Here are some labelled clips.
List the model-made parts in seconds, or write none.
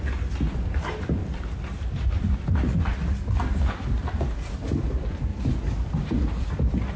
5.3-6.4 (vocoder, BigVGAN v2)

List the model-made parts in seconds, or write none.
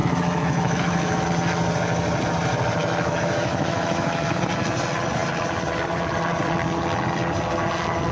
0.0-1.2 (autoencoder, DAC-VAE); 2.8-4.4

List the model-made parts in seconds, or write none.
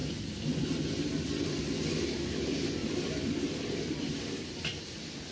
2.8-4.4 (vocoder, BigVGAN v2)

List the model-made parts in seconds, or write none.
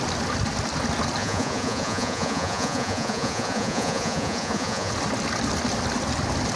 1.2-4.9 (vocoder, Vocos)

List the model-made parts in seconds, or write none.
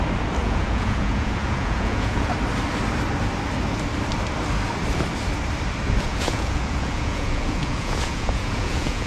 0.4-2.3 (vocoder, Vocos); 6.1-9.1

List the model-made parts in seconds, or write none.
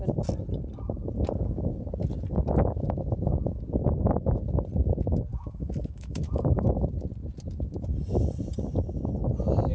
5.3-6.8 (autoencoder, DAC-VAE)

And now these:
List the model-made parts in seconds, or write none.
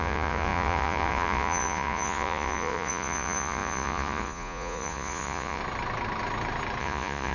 0.0-5.6 (vocoder, Vocos); 6.8-7.3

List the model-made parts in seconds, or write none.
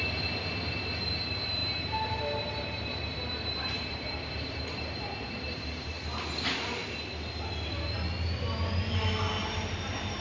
1.6-5.9 (vocoder, BigVGAN v2); 9.4-10.2